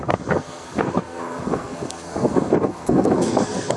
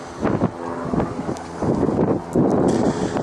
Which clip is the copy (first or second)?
first